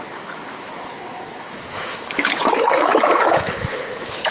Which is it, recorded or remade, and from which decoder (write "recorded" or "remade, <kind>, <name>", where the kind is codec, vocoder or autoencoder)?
remade, autoencoder, DAC-VAE